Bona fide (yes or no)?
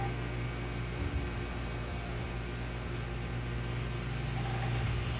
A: yes